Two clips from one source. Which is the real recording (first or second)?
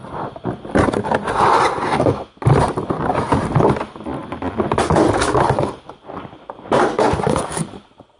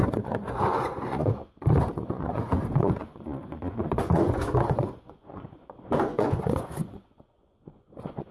first